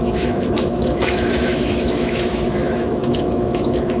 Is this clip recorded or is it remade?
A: remade